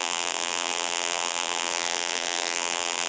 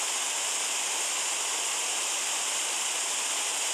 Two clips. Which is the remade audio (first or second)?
first